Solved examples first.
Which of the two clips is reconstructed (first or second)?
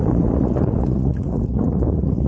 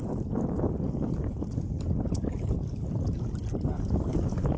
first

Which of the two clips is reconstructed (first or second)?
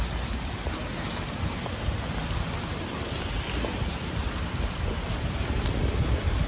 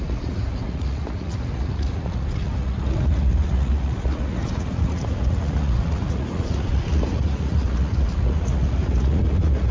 second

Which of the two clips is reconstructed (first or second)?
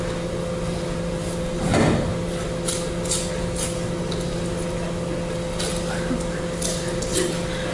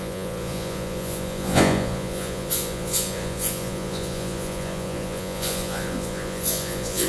second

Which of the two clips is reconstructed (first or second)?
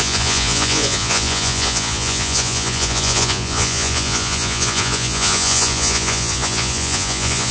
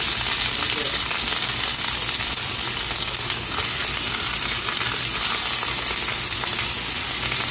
first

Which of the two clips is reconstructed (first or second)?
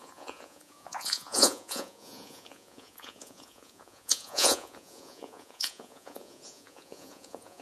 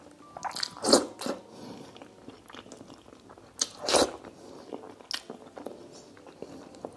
first